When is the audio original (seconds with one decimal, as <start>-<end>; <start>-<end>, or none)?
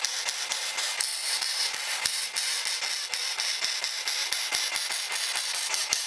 0.0-6.1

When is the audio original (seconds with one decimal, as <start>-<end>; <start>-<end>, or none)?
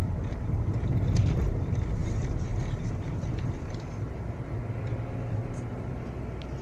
0.0-2.0; 2.6-6.6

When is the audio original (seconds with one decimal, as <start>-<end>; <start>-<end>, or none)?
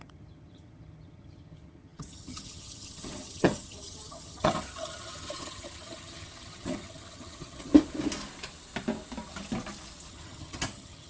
7.7-10.1